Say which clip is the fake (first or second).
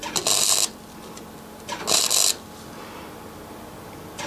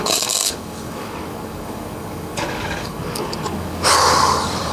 second